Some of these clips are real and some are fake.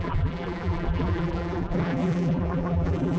fake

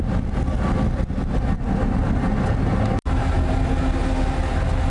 real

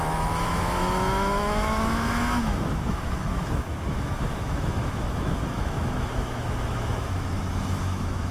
fake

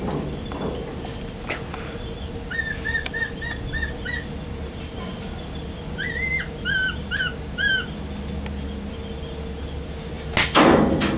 real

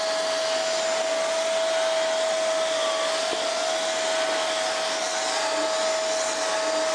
real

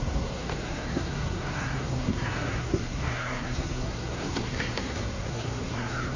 fake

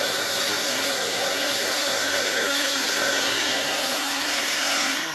fake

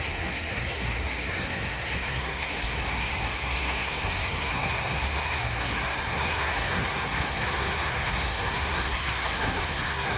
fake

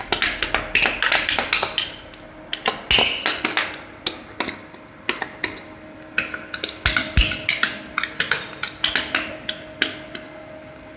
real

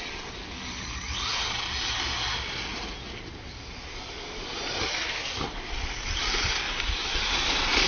real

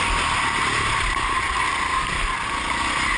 real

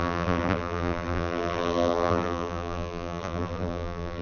fake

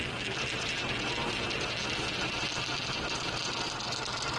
real